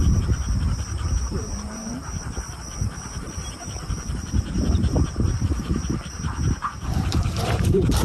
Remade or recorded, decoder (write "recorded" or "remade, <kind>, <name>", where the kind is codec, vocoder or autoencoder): remade, vocoder, BigVGAN v2